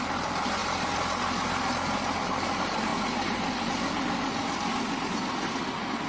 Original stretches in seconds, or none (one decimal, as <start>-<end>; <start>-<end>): 0.0-6.1